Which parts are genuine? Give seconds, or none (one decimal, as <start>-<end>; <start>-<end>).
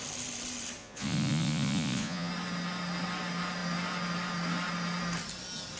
0.0-0.8; 2.3-5.8